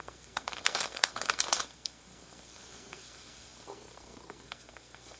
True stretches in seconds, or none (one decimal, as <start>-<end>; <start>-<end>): none